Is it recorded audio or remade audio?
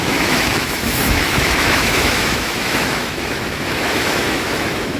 remade